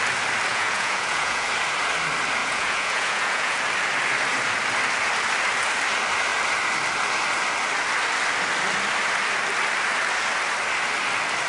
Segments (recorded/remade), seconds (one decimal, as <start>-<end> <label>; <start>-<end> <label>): 0.0-0.5 recorded; 0.5-1.5 remade; 1.5-2.4 recorded; 2.4-3.6 remade; 3.6-11.5 recorded